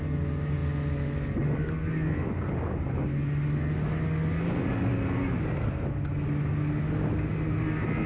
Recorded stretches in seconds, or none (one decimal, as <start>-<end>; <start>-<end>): 0.0-8.1